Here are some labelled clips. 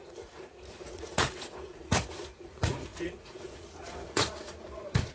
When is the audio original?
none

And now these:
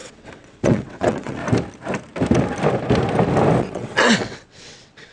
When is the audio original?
1.4-3.6

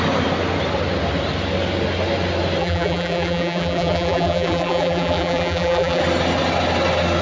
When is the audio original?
0.0-2.6; 6.0-7.2

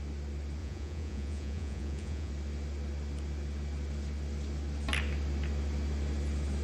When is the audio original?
0.0-0.6; 2.3-6.6

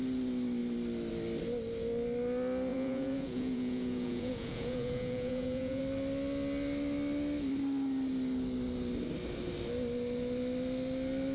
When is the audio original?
0.0-2.7; 5.8-11.3

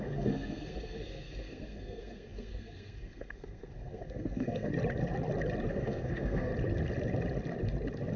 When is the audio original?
4.7-5.7; 6.5-8.2

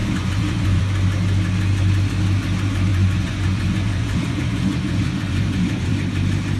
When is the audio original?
0.8-2.9; 5.9-6.6

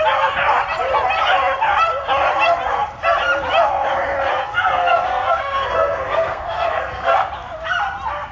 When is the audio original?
0.0-4.4; 7.3-8.3